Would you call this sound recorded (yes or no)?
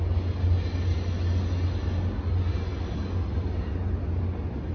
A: yes